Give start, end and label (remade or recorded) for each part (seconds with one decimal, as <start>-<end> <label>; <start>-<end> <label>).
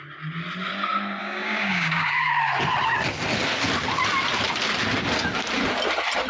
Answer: 0.0-1.2 recorded; 1.2-2.3 remade; 2.3-6.3 recorded